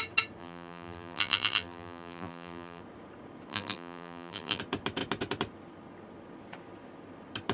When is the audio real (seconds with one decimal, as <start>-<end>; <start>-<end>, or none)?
0.0-0.4; 2.8-3.5; 4.6-7.5